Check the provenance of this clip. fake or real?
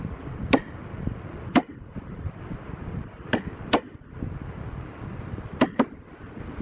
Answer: real